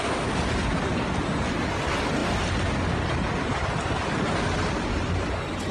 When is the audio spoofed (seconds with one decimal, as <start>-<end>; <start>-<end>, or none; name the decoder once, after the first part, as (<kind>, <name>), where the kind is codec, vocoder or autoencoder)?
none